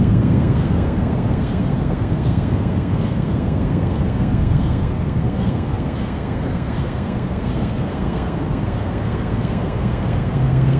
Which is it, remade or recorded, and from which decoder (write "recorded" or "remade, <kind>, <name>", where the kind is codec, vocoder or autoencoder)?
remade, codec, SNAC